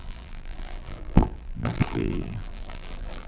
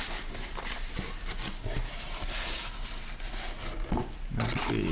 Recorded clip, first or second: second